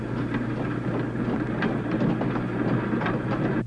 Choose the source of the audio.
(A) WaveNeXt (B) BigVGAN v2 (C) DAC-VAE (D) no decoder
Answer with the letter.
D